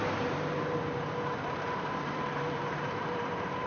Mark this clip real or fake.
fake